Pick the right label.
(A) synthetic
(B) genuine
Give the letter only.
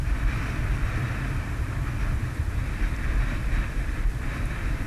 B